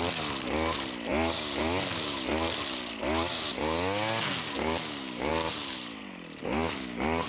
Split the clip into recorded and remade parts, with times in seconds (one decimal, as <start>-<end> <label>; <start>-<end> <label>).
0.0-7.3 recorded